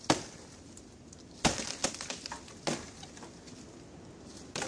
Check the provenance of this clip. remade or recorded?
recorded